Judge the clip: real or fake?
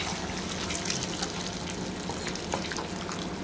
real